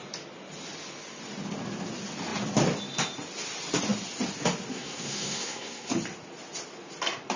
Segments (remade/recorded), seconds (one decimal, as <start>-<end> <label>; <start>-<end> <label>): 0.0-4.7 recorded; 4.7-5.9 remade; 5.9-7.4 recorded